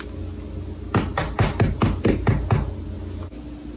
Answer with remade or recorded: recorded